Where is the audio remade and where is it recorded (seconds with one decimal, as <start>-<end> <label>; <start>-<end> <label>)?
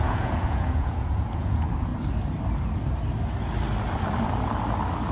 0.0-1.9 remade; 1.9-5.1 recorded